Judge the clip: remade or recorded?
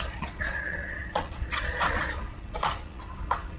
remade